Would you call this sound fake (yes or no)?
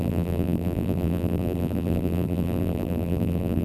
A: yes